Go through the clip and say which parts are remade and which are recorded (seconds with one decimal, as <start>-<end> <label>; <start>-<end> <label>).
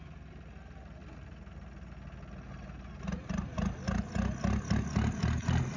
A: 0.0-5.8 recorded